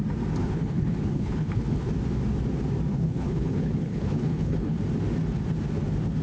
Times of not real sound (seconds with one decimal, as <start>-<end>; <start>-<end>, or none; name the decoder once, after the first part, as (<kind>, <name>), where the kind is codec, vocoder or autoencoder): 0.4-1.9 (codec, HILCodec); 2.9-4.8